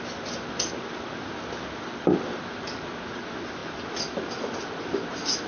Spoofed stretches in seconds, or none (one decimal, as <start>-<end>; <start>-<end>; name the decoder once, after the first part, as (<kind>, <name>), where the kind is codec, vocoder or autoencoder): none